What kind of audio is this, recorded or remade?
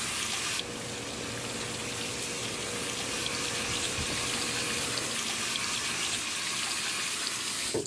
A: recorded